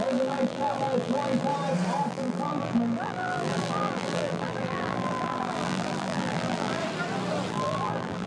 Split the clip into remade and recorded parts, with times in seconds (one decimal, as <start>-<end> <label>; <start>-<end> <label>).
0.0-1.5 remade; 1.5-2.1 recorded; 2.1-6.8 remade; 6.8-7.5 recorded; 7.5-8.3 remade

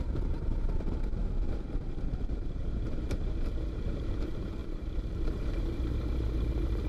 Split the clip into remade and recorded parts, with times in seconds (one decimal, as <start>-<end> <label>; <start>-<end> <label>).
0.0-6.9 remade

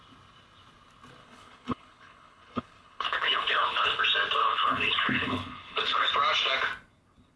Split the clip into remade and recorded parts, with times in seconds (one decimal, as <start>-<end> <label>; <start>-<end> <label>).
0.0-1.2 recorded; 1.2-4.0 remade; 4.0-4.4 recorded; 4.4-6.1 remade; 6.1-7.4 recorded

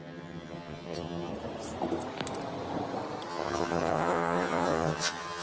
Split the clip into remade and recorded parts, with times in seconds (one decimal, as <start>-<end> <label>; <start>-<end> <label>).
0.0-1.3 remade; 1.3-3.3 recorded; 3.3-5.4 remade

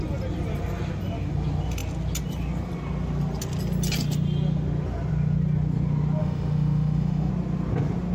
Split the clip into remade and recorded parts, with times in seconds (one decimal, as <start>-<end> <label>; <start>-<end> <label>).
0.0-6.2 recorded; 6.2-7.3 remade; 7.3-8.1 recorded